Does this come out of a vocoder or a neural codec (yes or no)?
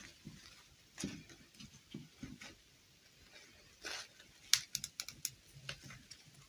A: no